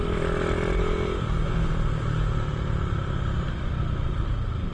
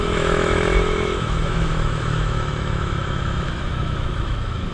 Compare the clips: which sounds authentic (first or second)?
first